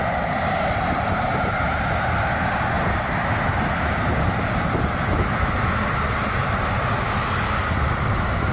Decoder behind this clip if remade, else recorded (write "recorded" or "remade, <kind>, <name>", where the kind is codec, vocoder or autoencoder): recorded